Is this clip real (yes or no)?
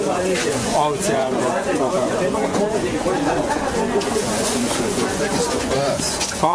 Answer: no